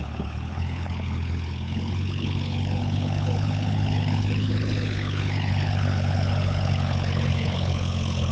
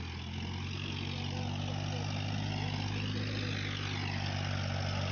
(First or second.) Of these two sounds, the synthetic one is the first